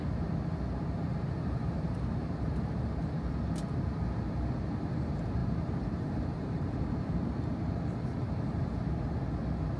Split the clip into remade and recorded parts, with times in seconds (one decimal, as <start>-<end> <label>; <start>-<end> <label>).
0.0-1.1 recorded; 1.1-3.1 remade; 3.1-5.4 recorded; 5.4-7.4 remade; 7.4-9.8 recorded